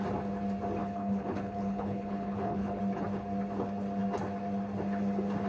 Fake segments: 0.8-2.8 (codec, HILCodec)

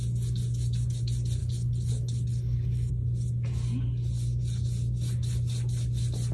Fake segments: 1.4-2.9 (codec, HILCodec)

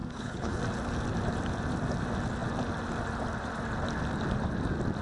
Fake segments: 0.0-0.6 (codec, HILCodec)